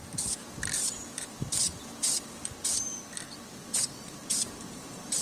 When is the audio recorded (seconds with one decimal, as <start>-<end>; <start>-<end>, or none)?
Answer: 2.9-3.5